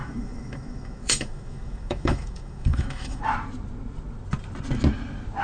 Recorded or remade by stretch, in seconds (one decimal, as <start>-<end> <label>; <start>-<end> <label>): 0.0-3.2 remade; 3.2-5.4 recorded